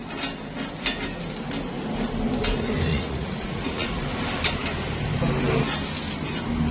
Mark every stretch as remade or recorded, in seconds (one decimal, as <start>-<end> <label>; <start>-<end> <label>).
0.0-2.9 recorded; 2.9-4.0 remade; 4.0-6.7 recorded